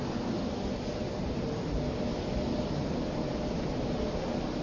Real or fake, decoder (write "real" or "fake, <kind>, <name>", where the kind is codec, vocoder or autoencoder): real